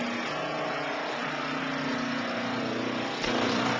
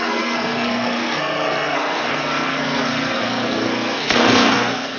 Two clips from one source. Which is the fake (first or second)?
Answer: second